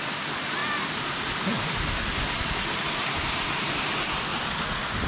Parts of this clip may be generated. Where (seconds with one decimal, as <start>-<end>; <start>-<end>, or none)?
none